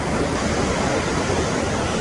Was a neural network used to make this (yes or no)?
no